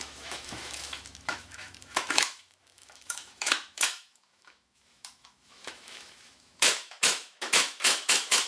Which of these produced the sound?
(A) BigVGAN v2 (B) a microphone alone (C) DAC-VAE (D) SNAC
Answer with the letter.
C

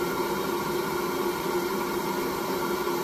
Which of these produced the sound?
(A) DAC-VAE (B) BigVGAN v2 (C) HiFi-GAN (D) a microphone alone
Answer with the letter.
D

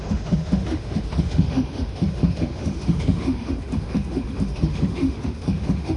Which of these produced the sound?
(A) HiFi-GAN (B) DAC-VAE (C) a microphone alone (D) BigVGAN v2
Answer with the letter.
B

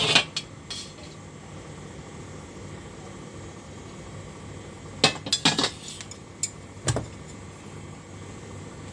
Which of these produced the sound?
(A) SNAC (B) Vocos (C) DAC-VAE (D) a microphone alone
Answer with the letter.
D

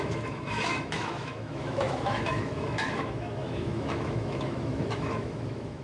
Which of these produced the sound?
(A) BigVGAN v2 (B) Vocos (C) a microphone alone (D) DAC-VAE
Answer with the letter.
D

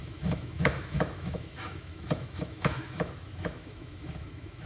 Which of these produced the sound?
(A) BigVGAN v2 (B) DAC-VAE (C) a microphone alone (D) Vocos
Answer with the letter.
B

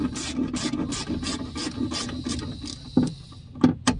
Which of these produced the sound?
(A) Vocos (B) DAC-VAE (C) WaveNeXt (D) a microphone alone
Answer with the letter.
D